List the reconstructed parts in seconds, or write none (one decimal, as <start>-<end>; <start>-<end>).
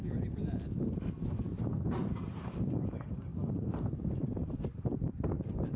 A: 0.0-5.8